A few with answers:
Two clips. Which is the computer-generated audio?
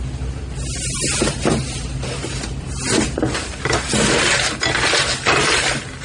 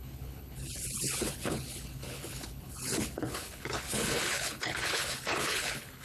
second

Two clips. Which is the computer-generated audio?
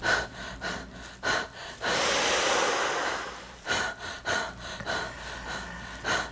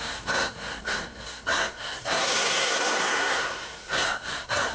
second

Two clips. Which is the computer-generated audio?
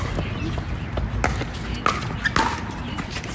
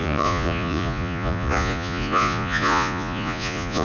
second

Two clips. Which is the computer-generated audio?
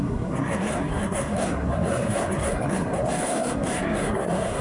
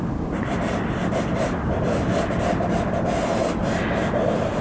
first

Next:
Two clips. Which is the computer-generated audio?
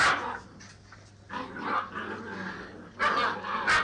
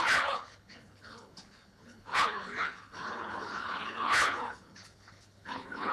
second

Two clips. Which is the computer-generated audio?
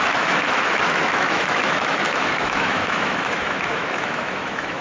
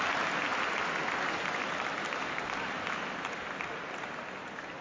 first